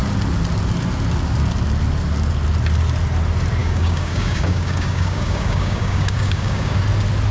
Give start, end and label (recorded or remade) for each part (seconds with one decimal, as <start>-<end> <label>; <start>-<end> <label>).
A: 0.0-3.6 recorded; 3.6-6.8 remade; 6.8-7.3 recorded